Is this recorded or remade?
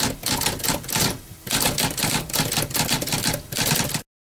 recorded